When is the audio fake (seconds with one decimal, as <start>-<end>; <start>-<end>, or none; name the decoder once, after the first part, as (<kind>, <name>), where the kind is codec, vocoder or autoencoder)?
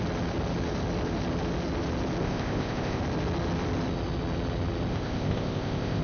2.2-3.0 (codec, ZipCodec); 4.9-6.0